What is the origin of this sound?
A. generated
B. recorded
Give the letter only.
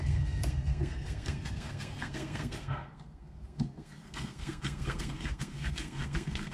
A